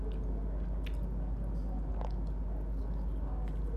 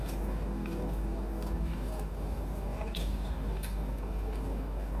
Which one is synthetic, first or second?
second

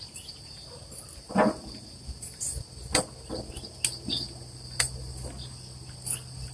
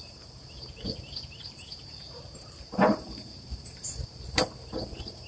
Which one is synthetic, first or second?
second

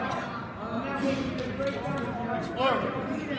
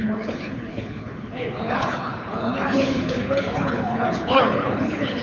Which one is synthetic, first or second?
second